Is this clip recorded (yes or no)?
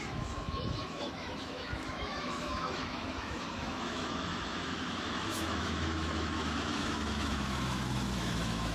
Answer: no